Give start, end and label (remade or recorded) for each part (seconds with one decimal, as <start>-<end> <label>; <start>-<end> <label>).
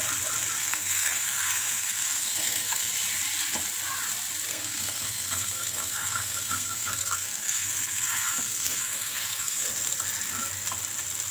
0.0-0.6 recorded; 0.6-2.9 remade; 2.9-4.5 recorded; 4.5-9.7 remade; 9.7-11.3 recorded